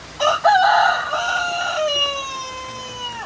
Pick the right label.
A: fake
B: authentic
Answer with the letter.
B